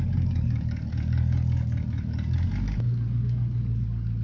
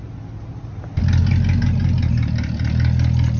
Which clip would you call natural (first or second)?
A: second